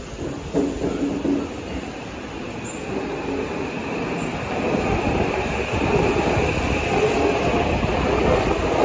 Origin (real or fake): real